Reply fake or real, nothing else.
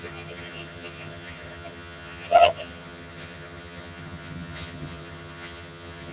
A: fake